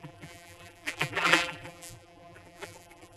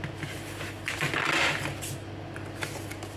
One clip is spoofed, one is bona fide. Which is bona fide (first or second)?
second